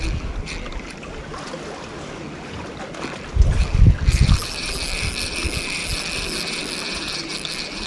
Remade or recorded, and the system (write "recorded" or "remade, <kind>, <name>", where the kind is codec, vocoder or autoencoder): recorded